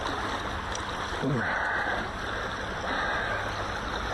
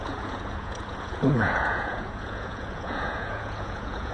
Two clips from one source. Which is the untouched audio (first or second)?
first